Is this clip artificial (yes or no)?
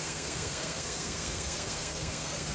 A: yes